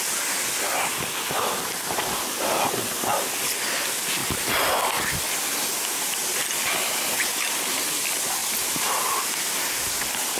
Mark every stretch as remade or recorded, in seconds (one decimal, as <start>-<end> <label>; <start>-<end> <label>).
0.0-10.4 recorded